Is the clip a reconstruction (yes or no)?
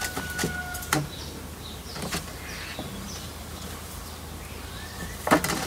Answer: no